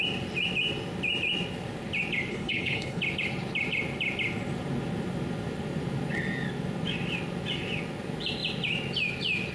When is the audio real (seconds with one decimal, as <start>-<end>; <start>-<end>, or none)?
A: 0.0-2.3; 3.0-9.5